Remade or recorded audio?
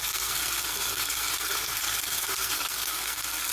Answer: remade